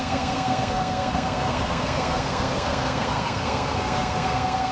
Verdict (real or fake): fake